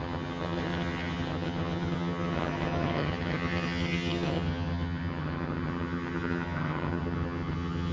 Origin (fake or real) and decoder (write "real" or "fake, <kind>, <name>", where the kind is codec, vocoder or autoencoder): fake, vocoder, HiFi-GAN